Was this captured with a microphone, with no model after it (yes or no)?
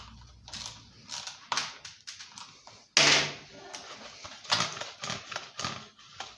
yes